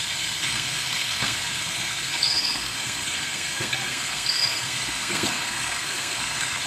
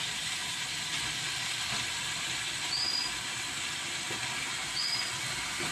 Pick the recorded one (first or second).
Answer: second